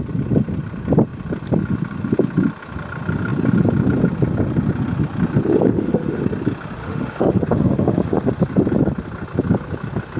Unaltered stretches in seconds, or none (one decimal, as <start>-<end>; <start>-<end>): 0.0-5.7; 6.2-6.8; 8.3-10.2